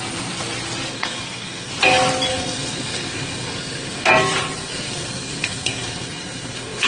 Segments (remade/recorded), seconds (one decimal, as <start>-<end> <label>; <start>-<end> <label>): 0.0-0.9 recorded; 0.9-1.7 remade; 1.7-2.3 recorded; 2.3-4.1 remade; 4.1-4.6 recorded; 4.6-6.9 remade